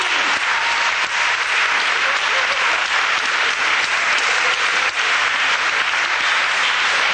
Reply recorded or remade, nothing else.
recorded